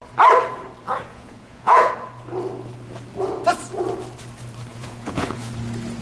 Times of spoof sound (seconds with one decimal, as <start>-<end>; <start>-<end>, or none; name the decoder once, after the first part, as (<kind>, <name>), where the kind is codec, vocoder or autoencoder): 1.1-1.9 (vocoder, Vocos); 4.7-5.5